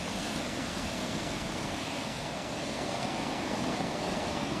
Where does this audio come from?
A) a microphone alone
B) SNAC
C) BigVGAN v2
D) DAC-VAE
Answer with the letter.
B